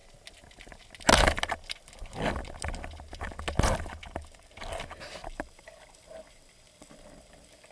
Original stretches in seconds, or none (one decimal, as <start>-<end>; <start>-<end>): 0.0-5.2; 7.3-7.7